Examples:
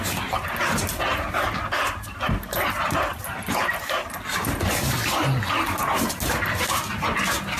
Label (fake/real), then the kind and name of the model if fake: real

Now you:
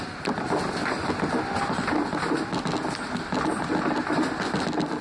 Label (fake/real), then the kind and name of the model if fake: real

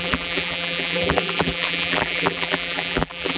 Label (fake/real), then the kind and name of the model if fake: fake, vocoder, BigVGAN v2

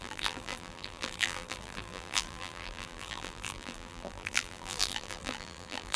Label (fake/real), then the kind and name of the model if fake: fake, vocoder, BigVGAN v2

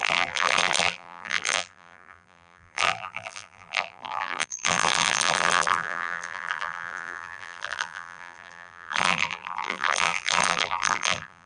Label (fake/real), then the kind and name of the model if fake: fake, vocoder, BigVGAN v2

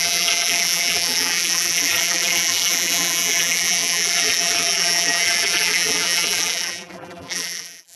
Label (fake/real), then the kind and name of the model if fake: fake, vocoder, BigVGAN v2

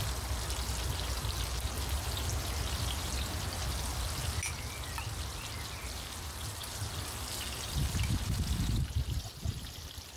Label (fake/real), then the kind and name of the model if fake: real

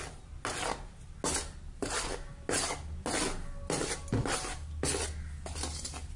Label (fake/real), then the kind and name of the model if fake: real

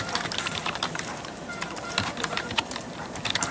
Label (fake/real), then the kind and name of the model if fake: fake, vocoder, BigVGAN v2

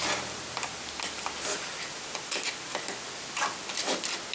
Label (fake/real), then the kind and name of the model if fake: real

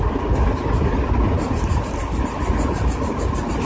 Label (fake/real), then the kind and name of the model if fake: real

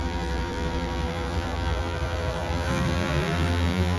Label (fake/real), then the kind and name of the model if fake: fake, vocoder, BigVGAN v2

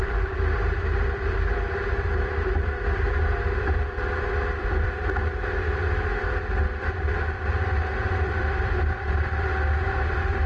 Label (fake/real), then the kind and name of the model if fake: fake, vocoder, BigVGAN v2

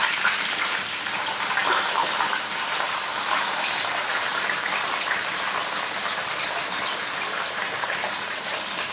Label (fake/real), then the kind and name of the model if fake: fake, vocoder, BigVGAN v2